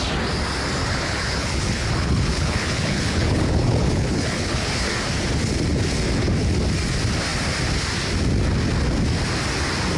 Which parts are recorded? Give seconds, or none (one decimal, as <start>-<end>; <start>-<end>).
0.0-0.8; 4.7-10.0